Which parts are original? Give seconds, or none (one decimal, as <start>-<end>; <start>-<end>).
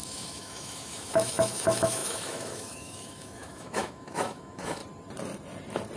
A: 4.8-6.0